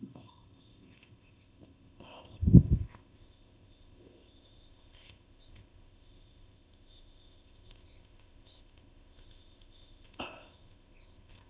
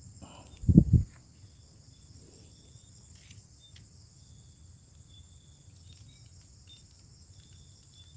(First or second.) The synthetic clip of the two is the first